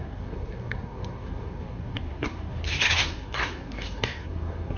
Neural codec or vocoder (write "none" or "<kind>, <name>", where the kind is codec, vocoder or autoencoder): codec, SNAC